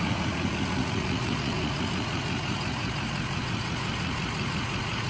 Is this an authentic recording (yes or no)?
no